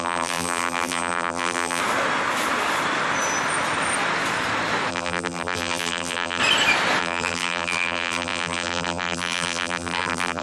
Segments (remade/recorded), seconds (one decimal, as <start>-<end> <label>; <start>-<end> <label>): 0.0-1.8 remade; 1.8-4.9 recorded; 4.9-6.4 remade; 6.4-7.0 recorded; 7.0-10.4 remade